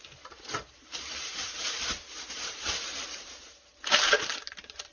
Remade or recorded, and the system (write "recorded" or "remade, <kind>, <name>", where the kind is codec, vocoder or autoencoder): remade, vocoder, BigVGAN v2